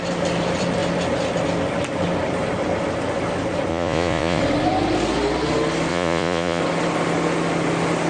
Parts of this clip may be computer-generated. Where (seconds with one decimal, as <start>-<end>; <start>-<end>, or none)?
3.7-4.4; 5.9-6.6